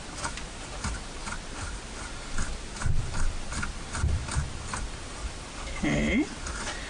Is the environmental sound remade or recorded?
recorded